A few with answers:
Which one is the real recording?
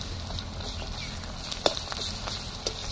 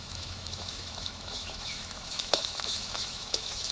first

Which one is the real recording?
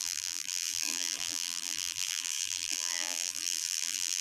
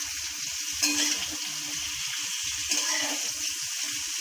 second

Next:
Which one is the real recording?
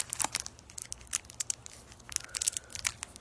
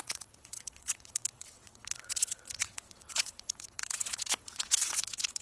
first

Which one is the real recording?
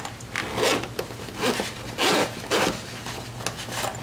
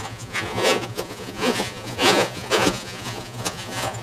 first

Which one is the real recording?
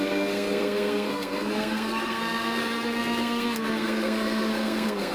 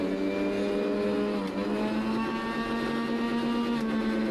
second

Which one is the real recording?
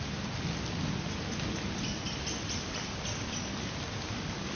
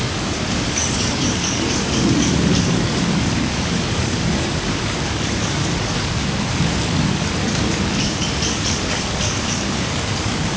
first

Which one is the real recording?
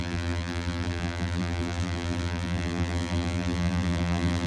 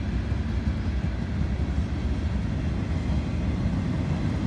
second